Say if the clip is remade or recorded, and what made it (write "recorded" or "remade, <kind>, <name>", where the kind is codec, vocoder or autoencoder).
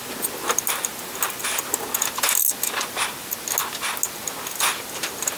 recorded